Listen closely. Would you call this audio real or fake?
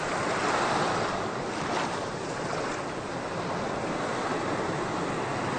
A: real